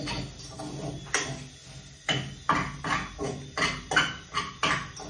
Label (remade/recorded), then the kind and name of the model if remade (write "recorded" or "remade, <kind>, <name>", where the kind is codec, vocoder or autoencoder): recorded